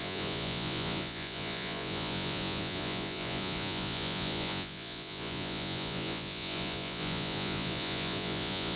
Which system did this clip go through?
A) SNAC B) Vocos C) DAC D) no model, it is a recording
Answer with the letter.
B